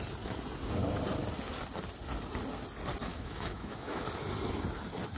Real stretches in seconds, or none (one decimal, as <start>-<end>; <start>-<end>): 0.0-3.0; 4.0-5.2